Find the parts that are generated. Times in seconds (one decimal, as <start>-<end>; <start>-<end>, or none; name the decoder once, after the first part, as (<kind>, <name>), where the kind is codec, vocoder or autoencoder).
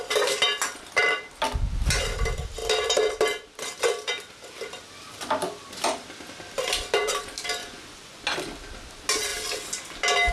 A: 7.6-8.2 (vocoder, Vocos)